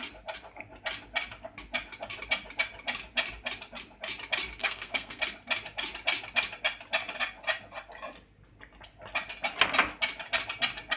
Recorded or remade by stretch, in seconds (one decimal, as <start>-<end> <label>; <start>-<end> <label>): 0.0-4.6 recorded; 4.6-5.2 remade; 5.2-11.0 recorded